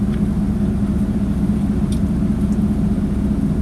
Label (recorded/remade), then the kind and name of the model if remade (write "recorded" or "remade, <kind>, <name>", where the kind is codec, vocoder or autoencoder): recorded